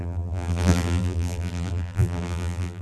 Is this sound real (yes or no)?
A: no